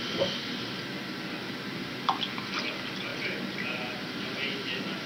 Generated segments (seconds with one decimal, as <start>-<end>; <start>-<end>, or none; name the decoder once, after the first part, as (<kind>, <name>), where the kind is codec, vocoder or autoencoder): 3.1-3.6 (vocoder, BigVGAN v2)